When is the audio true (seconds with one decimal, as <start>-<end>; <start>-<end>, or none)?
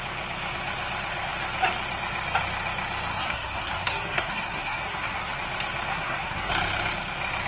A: 0.0-3.1; 5.3-5.9; 6.5-7.5